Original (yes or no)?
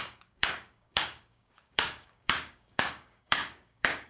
no